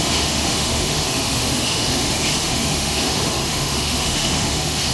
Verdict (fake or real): fake